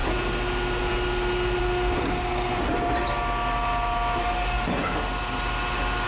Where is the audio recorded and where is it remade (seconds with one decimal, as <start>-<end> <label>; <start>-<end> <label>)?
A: 0.0-4.2 recorded; 4.2-4.7 remade; 4.7-6.1 recorded